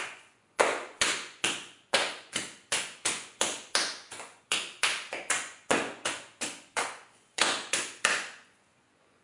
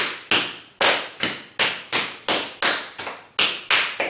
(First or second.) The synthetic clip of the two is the first